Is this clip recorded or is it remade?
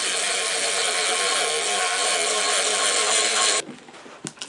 recorded